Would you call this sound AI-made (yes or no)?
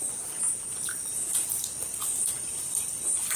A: no